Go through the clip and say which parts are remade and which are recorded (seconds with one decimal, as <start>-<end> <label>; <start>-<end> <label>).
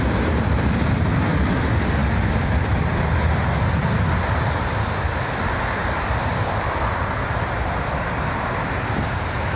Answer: 0.0-2.0 recorded; 2.0-4.7 remade; 4.7-5.8 recorded; 5.8-7.8 remade; 7.8-9.6 recorded